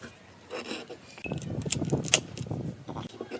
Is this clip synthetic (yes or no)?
no